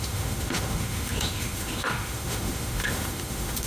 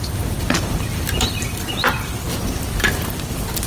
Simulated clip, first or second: first